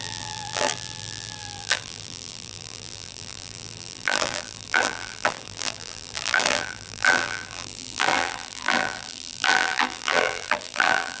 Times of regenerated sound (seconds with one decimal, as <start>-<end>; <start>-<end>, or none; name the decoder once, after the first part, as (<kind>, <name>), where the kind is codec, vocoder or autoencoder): 0.0-11.2 (vocoder, BigVGAN v2)